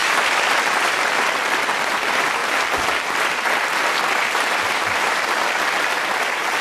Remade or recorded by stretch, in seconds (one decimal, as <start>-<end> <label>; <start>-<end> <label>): 0.0-0.9 recorded; 0.9-2.4 remade; 2.4-5.0 recorded; 5.0-6.6 remade